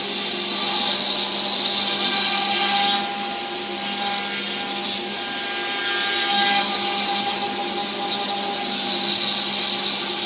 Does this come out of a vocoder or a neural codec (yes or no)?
no